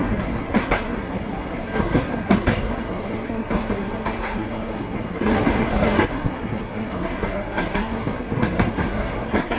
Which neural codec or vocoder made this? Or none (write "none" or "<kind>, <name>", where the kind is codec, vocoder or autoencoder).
codec, SNAC